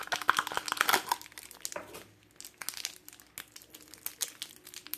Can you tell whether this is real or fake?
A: real